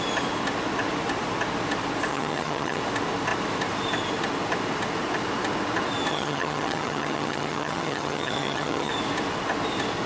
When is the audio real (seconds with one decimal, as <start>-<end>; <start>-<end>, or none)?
0.0-2.1; 2.8-6.1; 8.9-10.1